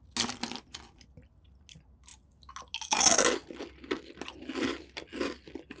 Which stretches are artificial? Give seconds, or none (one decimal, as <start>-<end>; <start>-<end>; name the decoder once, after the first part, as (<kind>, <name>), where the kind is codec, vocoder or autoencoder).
none

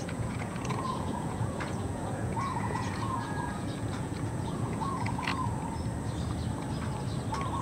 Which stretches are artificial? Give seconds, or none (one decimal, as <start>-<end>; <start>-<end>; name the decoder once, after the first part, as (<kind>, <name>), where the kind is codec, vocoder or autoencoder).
0.0-5.3 (vocoder, Vocos)

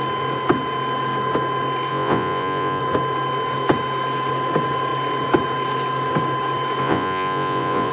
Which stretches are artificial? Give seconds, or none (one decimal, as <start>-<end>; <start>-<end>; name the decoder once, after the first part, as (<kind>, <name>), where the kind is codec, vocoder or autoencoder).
1.9-2.8 (vocoder, Vocos); 6.8-7.9

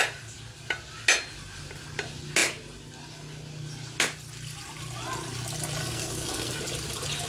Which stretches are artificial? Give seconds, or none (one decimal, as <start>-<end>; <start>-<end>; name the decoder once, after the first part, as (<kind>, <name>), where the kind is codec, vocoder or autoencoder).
5.8-6.6 (codec, SNAC)